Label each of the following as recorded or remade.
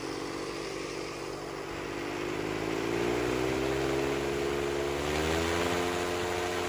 recorded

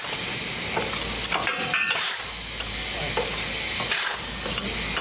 recorded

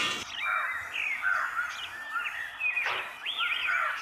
recorded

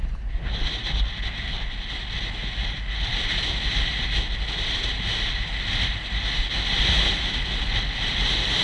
recorded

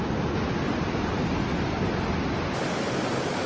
recorded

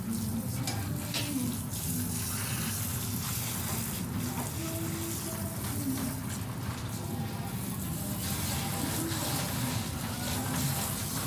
recorded